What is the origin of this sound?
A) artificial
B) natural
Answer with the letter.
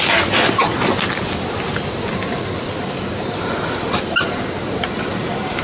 B